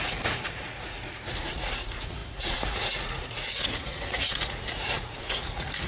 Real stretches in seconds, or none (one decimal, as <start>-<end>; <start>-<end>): none